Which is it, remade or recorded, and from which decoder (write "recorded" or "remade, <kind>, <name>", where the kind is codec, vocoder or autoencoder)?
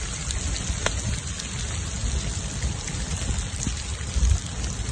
recorded